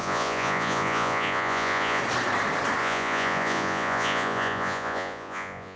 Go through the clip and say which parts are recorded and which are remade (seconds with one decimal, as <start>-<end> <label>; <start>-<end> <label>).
0.0-2.0 remade; 2.0-2.8 recorded; 2.8-5.8 remade